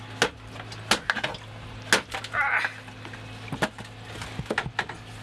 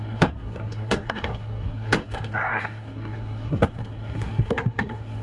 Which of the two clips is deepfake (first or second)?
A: second